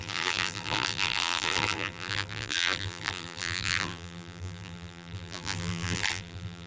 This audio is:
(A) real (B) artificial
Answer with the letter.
B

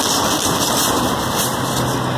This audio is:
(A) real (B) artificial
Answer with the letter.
A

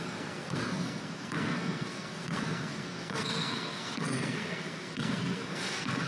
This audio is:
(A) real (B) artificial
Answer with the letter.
B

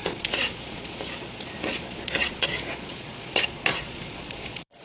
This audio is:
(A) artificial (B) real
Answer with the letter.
A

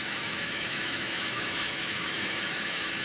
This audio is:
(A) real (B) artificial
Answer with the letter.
B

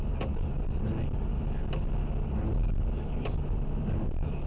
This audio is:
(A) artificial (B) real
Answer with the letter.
B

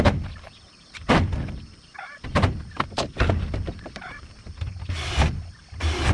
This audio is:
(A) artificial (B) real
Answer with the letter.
A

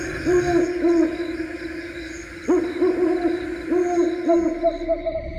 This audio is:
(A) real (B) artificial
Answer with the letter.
A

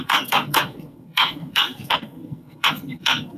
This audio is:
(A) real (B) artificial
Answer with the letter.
B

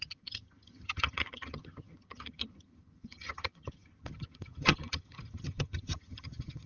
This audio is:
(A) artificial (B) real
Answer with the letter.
A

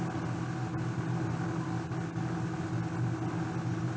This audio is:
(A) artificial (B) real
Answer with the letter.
B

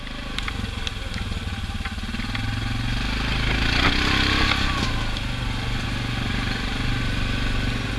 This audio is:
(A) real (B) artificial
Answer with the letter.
A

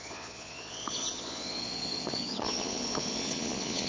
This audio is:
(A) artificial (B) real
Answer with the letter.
A